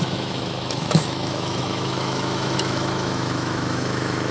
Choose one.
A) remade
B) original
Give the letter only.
A